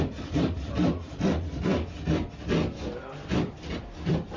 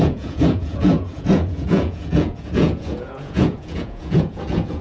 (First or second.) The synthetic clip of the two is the second